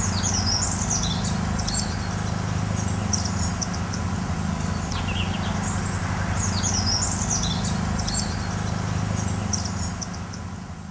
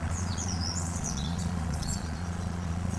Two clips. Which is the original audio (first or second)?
first